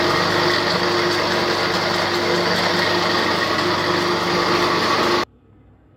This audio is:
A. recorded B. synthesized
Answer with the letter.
A